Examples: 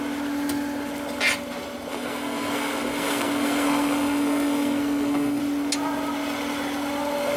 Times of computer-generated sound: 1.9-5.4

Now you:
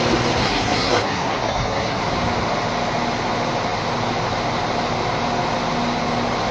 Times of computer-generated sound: 0.4-2.0

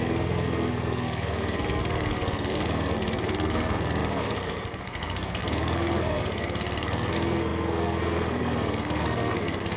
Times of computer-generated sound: 0.0-9.8

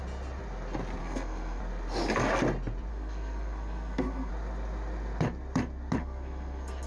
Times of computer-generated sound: 1.0-1.6; 2.9-4.3; 6.0-6.9

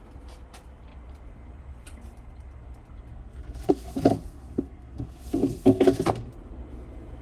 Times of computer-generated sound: 3.1-6.3

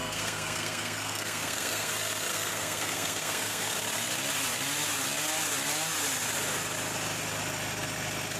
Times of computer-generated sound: 0.0-1.9; 2.3-3.7

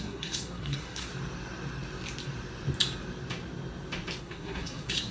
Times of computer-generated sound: 0.0-1.1; 4.2-5.1

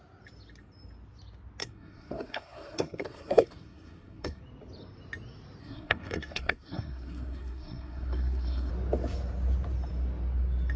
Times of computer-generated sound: 1.6-4.4; 5.6-8.7